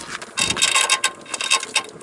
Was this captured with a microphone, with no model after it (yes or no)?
yes